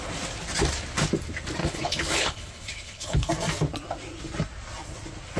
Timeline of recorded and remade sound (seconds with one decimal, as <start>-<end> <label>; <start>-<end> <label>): 0.0-1.6 recorded; 1.6-3.3 remade; 3.3-5.4 recorded